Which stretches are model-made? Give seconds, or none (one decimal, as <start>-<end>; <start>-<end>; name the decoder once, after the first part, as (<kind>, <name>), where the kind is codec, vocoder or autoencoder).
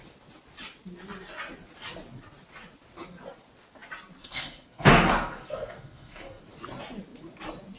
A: 4.2-6.4 (codec, SNAC)